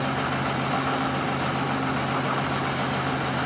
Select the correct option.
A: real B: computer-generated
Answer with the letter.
A